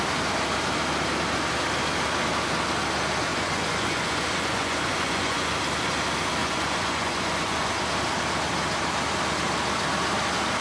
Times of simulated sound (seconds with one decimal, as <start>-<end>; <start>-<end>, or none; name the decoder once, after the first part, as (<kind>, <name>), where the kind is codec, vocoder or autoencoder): 3.3-5.5 (vocoder, Vocos); 6.4-7.7